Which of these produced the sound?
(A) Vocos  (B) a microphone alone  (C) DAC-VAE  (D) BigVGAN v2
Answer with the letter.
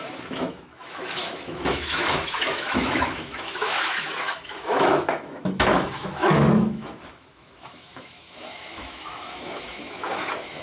C